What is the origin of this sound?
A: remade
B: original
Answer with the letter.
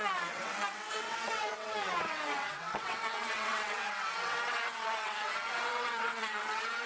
A